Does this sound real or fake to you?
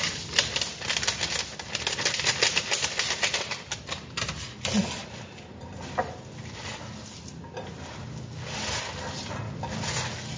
real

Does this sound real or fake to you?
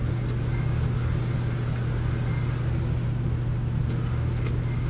real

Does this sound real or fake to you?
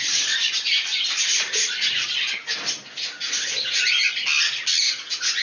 real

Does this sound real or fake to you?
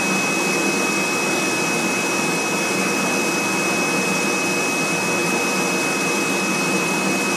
real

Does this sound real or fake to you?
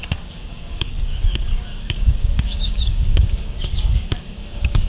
fake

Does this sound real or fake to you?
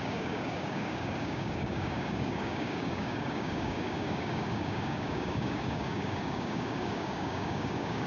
fake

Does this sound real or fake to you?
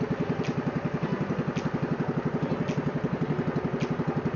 real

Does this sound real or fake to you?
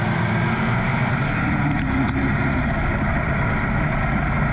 real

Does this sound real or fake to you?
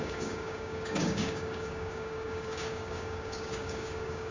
fake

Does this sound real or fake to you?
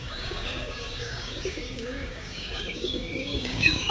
fake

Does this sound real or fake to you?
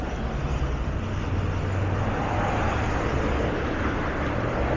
real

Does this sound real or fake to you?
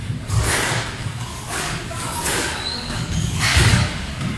fake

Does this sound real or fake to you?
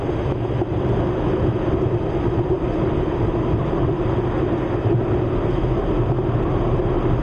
real